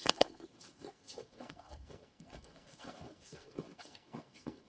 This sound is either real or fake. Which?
fake